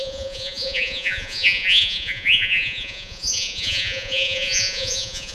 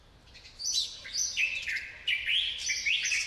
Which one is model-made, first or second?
first